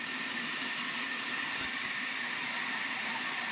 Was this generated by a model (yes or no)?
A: yes